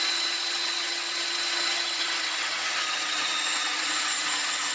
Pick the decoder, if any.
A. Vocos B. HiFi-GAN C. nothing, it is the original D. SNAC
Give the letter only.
B